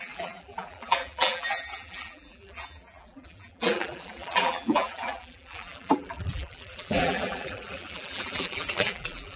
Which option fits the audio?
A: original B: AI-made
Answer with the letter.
B